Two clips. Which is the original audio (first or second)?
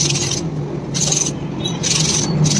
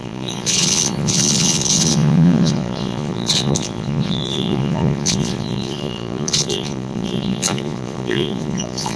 first